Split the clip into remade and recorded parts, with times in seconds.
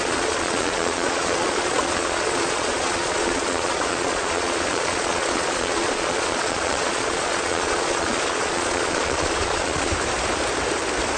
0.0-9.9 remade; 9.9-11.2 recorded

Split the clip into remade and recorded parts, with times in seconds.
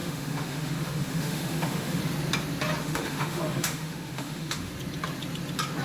0.0-2.0 remade; 2.0-2.8 recorded; 2.8-4.7 remade; 4.7-5.8 recorded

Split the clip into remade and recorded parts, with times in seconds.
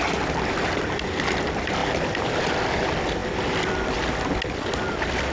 0.0-5.3 recorded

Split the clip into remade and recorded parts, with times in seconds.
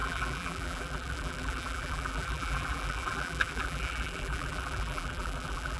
0.0-5.8 remade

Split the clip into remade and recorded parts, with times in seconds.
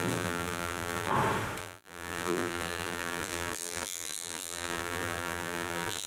0.0-1.1 remade; 1.1-1.6 recorded; 1.6-6.1 remade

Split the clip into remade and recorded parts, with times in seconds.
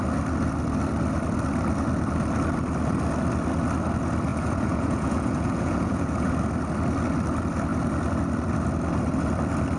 0.0-4.3 recorded; 4.3-6.3 remade; 6.3-9.8 recorded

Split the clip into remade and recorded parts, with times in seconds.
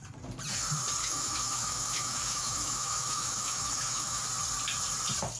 0.0-1.0 recorded; 1.0-4.2 remade; 4.2-5.4 recorded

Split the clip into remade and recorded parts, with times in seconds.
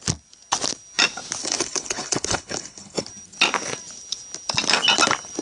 0.0-1.4 recorded; 1.4-3.1 remade; 3.1-5.4 recorded